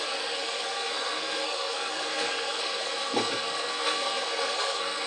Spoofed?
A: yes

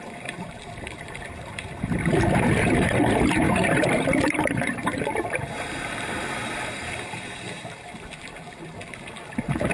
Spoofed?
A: yes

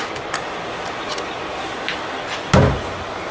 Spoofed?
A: no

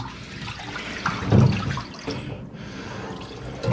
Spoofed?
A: no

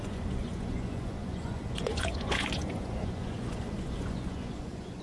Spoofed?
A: yes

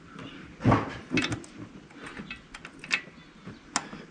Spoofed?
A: no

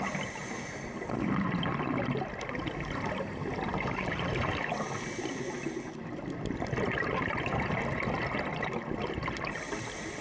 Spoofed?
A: no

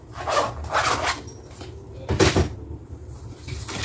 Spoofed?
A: no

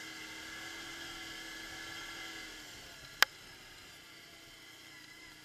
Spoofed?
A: no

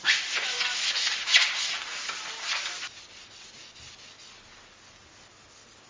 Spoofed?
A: no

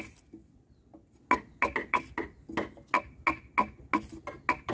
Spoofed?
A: no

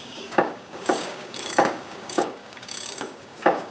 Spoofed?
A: yes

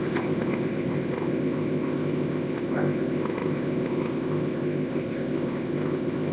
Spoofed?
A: yes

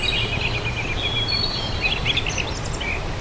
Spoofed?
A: no